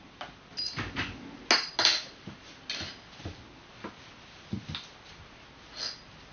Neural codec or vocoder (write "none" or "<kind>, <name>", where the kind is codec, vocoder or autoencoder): none